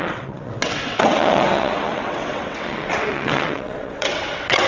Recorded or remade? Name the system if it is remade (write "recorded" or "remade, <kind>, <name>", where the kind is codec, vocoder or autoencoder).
remade, vocoder, WaveNeXt